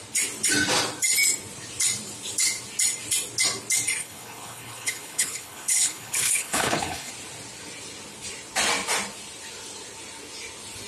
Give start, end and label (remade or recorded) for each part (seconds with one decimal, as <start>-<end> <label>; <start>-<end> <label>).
0.0-4.0 recorded; 4.0-7.1 remade; 7.1-10.9 recorded